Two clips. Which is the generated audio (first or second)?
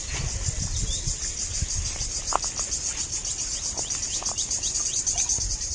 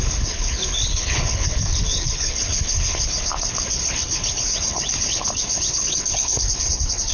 second